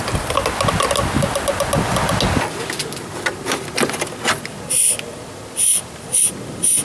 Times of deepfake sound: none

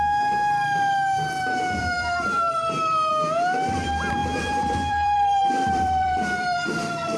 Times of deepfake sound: 1.8-3.1 (vocoder, BigVGAN v2); 4.2-7.2

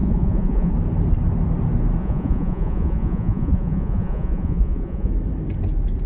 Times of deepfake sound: 0.0-0.7 (vocoder, Vocos); 2.0-5.1

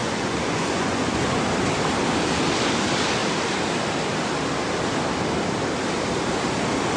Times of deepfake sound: 0.0-1.4 (vocoder, Vocos)

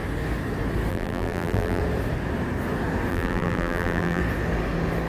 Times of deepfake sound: 0.9-1.8 (vocoder, BigVGAN v2); 3.1-4.2

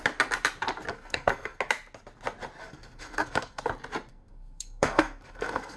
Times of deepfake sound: 0.9-1.6 (codec, SNAC); 2.6-3.6; 4.1-5.8